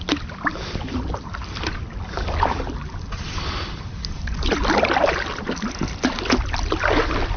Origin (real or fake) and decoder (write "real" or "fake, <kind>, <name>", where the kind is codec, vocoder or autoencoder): real